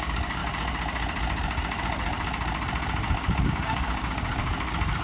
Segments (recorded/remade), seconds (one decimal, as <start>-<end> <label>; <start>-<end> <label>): 0.0-0.4 remade; 0.4-3.4 recorded; 3.4-4.4 remade; 4.4-5.0 recorded

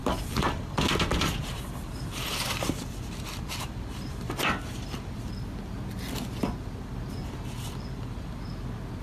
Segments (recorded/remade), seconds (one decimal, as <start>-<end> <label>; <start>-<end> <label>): 0.0-5.3 remade; 5.3-7.2 recorded; 7.2-8.3 remade; 8.3-9.0 recorded

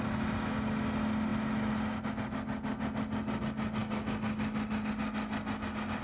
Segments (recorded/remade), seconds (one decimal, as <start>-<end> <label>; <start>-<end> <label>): 0.0-6.0 recorded

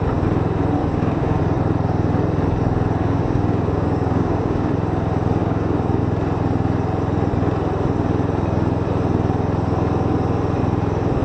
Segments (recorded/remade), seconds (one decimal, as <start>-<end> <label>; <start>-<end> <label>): 0.0-0.8 recorded; 0.8-1.4 remade; 1.4-3.0 recorded; 3.0-4.7 remade; 4.7-5.4 recorded; 5.4-6.0 remade; 6.0-11.2 recorded

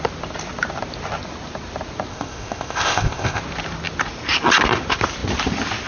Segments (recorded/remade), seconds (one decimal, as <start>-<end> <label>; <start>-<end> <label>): 0.0-2.1 recorded; 2.1-3.4 remade; 3.4-5.9 recorded

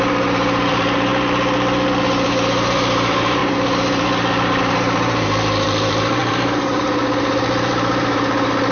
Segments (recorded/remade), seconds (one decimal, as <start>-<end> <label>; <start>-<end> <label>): 0.0-1.1 remade; 1.1-2.0 recorded; 2.0-8.7 remade